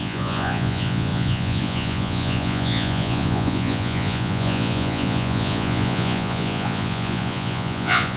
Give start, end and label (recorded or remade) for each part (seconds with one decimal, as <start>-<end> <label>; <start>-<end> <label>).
0.0-8.2 remade